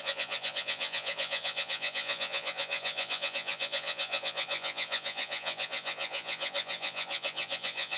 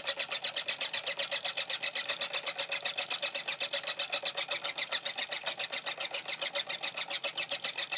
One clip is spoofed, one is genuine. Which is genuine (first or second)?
second